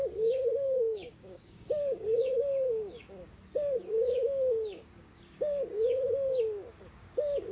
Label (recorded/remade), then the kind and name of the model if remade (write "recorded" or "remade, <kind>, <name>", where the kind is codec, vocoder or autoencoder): remade, codec, DAC